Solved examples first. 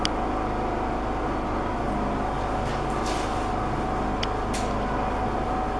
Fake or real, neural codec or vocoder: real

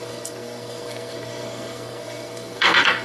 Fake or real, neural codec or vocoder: fake, codec, SNAC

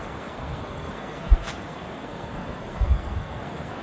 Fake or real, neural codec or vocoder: fake, codec, SNAC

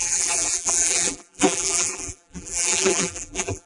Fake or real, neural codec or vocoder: fake, vocoder, BigVGAN v2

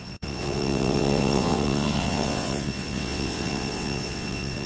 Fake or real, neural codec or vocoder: fake, vocoder, WaveNeXt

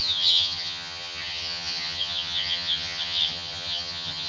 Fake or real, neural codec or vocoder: fake, vocoder, HiFi-GAN